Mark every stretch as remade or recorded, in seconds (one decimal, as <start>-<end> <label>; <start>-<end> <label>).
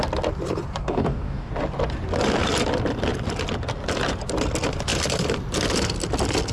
0.0-0.8 recorded; 0.8-1.5 remade; 1.5-6.5 recorded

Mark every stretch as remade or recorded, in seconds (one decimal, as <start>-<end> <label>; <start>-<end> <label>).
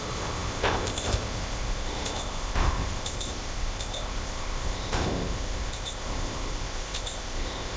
0.0-7.8 remade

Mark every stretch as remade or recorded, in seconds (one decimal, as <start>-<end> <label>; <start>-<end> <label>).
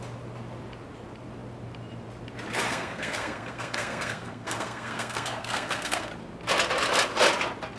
0.0-2.7 recorded; 2.7-6.1 remade; 6.1-7.8 recorded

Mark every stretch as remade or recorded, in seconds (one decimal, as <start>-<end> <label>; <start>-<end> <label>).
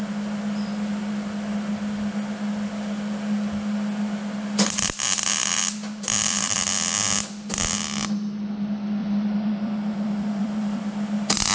0.0-5.4 recorded; 5.4-6.7 remade; 6.7-9.0 recorded; 9.0-10.8 remade; 10.8-11.5 recorded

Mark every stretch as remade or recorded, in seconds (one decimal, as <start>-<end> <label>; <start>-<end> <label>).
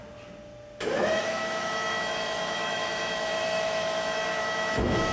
0.0-1.2 recorded; 1.2-5.1 remade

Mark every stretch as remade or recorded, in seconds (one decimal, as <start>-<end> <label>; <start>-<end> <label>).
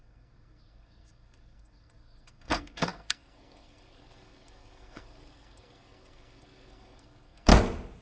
0.0-7.5 remade; 7.5-8.0 recorded